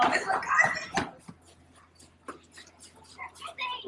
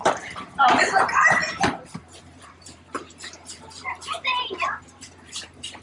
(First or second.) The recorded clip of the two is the first